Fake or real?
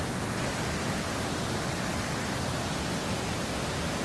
real